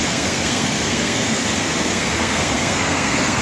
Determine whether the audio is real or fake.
fake